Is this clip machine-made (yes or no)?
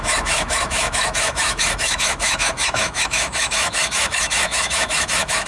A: yes